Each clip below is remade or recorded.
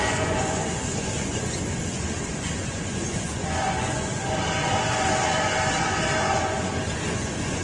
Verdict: remade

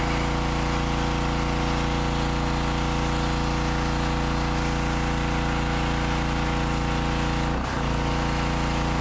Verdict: recorded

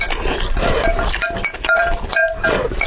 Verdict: recorded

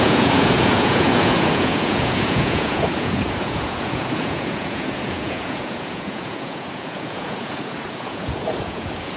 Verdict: remade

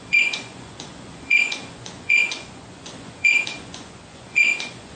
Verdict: remade